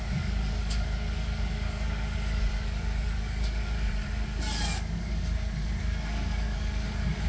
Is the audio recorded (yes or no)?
no